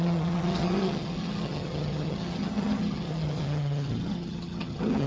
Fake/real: fake